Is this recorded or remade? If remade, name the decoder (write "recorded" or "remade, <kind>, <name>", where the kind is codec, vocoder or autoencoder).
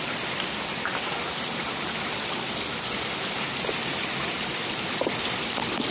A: recorded